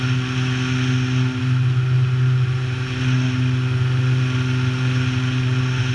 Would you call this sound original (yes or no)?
yes